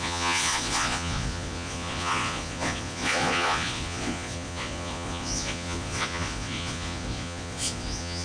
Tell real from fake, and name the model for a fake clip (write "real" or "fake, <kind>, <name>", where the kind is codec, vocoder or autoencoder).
fake, vocoder, Vocos